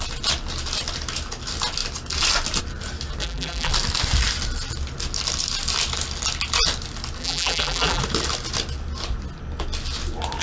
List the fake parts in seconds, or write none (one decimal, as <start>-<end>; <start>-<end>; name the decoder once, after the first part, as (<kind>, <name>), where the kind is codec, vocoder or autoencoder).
3.2-3.7 (vocoder, BigVGAN v2); 7.2-8.0